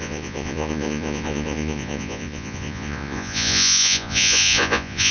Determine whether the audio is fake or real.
fake